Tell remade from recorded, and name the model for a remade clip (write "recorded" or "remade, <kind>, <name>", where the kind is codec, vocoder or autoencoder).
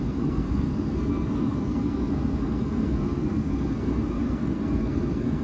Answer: remade, codec, SNAC